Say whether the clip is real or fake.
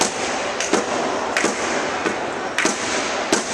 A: real